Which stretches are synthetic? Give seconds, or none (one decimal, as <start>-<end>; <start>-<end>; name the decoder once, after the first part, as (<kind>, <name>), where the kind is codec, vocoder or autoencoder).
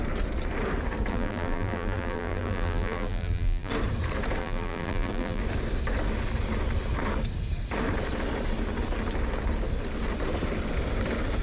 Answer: 1.1-3.7 (vocoder, BigVGAN v2); 4.4-5.4